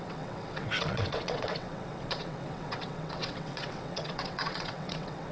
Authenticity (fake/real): fake